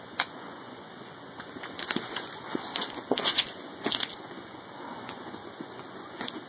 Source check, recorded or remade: remade